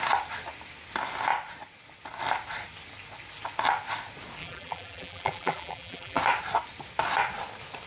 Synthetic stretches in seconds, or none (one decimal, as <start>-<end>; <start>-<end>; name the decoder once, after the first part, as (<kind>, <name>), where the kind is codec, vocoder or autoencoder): 4.4-6.2 (vocoder, BigVGAN v2)